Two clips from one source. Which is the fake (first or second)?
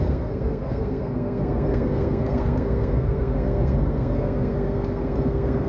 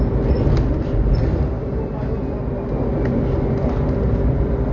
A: first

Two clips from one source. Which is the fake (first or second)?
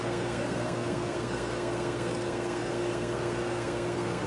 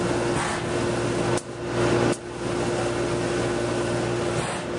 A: first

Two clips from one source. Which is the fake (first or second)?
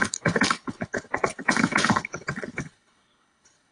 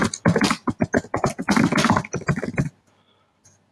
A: first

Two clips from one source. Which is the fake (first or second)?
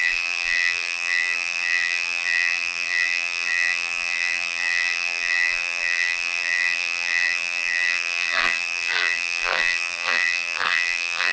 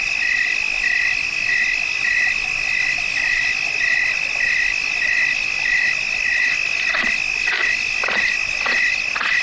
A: first